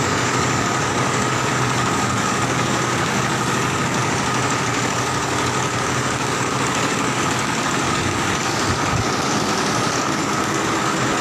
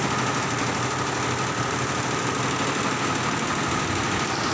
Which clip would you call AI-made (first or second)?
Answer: first